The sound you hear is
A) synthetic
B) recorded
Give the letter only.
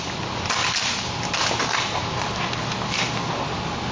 B